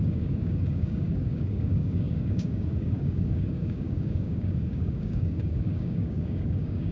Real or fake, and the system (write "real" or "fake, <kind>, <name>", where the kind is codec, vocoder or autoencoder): fake, codec, DAC